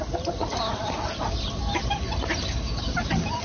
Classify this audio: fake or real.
real